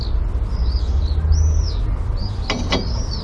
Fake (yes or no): no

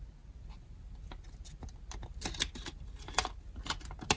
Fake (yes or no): no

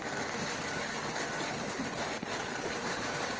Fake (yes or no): no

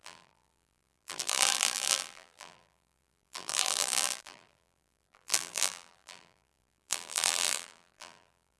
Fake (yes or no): yes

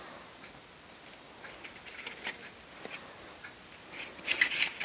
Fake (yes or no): no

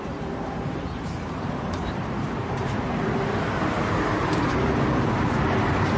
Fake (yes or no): yes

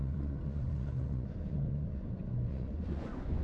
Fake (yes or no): yes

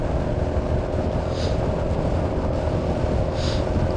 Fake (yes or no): no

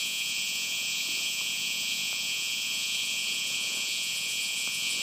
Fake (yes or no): yes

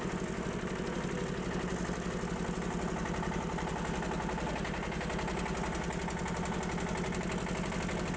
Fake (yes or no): no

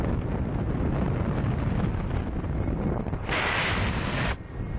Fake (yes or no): no